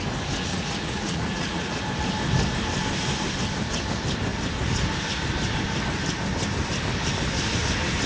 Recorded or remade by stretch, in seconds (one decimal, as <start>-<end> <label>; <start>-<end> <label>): 0.0-0.5 recorded; 0.5-1.8 remade; 1.8-8.1 recorded